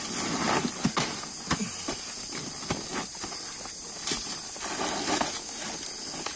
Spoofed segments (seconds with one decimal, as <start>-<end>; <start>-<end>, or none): none